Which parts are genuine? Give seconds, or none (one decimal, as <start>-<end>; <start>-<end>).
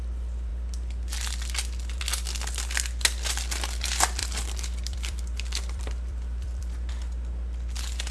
0.0-4.2; 6.9-8.1